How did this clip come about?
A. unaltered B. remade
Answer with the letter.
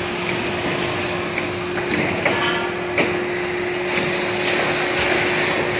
A